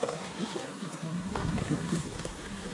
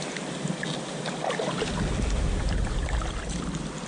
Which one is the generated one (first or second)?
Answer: first